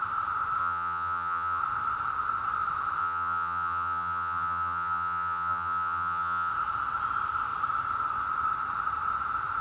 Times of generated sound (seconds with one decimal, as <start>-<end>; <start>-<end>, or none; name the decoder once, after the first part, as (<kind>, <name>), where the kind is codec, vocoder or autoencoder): 0.6-1.6 (vocoder, HiFi-GAN); 3.0-6.5